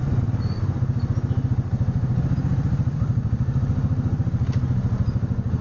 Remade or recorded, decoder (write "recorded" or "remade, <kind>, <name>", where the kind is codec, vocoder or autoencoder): recorded